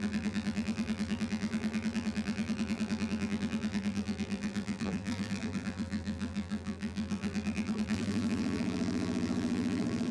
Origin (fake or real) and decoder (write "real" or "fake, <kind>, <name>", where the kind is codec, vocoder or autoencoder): fake, vocoder, BigVGAN v2